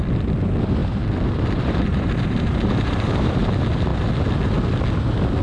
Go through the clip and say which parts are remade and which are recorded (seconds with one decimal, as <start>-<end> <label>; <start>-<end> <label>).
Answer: 0.0-0.8 recorded; 0.8-3.5 remade; 3.5-5.4 recorded